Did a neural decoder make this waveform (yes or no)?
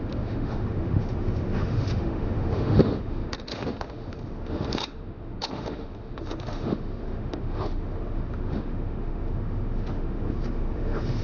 yes